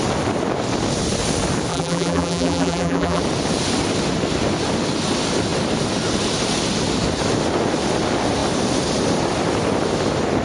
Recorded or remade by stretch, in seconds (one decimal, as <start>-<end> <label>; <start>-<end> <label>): 0.0-1.7 recorded; 1.7-3.2 remade; 3.2-10.4 recorded